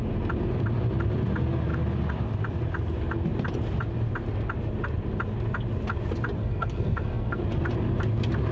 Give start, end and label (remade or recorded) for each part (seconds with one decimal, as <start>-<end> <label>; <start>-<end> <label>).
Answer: 0.0-6.4 recorded; 6.4-7.4 remade; 7.4-8.5 recorded